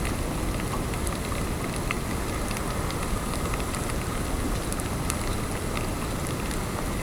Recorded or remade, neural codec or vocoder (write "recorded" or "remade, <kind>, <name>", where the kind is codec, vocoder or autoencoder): recorded